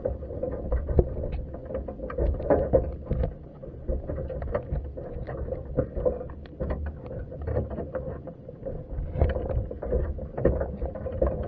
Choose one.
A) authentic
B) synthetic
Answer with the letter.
A